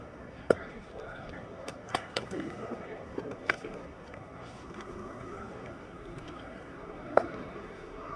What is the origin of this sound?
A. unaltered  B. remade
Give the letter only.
B